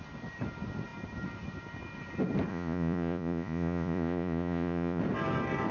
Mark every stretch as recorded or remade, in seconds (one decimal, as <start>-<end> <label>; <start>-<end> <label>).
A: 0.0-2.5 recorded; 2.5-5.0 remade; 5.0-5.7 recorded